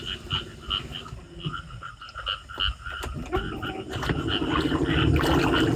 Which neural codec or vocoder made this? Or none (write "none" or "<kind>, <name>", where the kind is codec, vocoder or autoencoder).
none